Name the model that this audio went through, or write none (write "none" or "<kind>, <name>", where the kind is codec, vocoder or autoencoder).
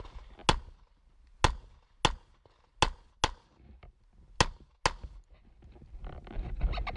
none